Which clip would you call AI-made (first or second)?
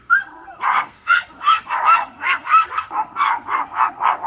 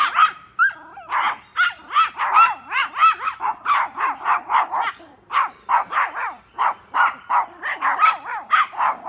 first